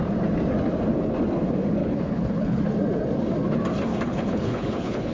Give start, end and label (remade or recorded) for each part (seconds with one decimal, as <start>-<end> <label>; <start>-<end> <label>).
0.0-1.8 recorded; 1.8-2.6 remade; 2.6-3.9 recorded; 3.9-5.1 remade